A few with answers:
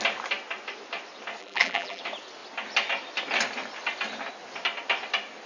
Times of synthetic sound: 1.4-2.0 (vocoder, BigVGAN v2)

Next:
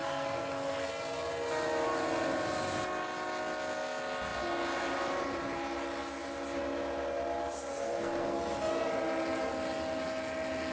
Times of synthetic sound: 0.0-0.9 (codec, SNAC); 7.7-8.4

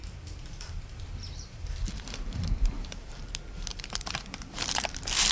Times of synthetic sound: 0.0-3.2 (vocoder, BigVGAN v2); 3.7-4.8

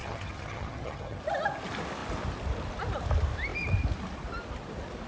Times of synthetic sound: 0.0-1.2 (vocoder, HiFi-GAN)